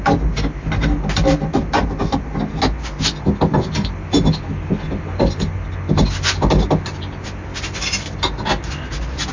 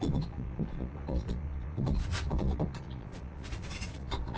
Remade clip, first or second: second